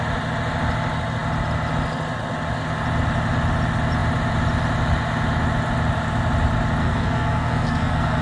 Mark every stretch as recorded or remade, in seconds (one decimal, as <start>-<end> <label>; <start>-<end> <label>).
0.0-6.8 recorded; 6.8-8.2 remade